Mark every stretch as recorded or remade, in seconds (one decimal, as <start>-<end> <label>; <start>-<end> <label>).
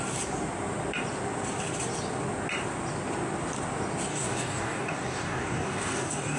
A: 0.0-4.1 recorded; 4.1-6.4 remade